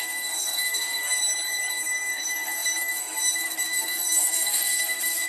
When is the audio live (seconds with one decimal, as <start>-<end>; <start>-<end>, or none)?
1.2-1.7